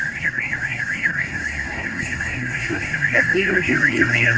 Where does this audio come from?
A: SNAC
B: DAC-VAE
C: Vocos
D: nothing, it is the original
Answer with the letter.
A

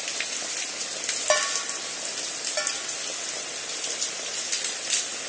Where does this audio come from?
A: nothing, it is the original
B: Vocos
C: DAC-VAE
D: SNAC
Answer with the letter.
A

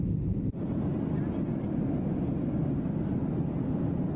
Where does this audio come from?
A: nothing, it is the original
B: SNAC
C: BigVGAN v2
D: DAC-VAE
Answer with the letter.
A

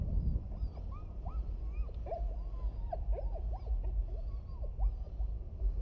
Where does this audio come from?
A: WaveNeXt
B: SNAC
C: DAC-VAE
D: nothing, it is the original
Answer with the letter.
D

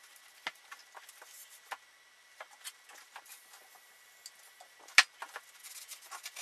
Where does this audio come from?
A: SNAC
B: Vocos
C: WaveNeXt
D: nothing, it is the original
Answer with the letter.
D